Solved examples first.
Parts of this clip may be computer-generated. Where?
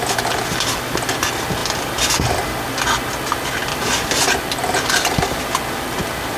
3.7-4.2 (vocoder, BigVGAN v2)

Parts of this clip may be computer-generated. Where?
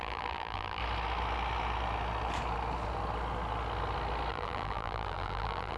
0.0-0.8 (vocoder, BigVGAN v2); 4.3-5.8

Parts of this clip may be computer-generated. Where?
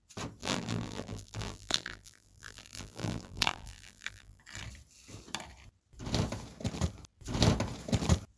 0.4-4.4 (vocoder, BigVGAN v2)